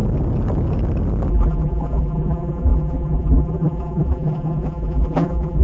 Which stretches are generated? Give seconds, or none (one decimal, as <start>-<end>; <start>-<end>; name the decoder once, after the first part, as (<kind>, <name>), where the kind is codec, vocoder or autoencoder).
1.3-5.6 (vocoder, BigVGAN v2)